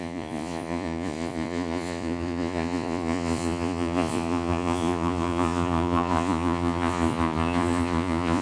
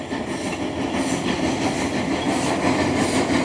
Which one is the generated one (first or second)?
first